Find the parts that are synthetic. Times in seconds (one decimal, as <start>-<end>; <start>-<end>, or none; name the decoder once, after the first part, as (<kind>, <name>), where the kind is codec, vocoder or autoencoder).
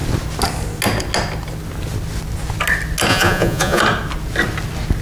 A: 3.1-3.8 (vocoder, Vocos)